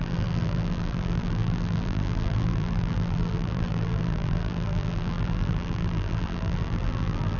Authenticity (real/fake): fake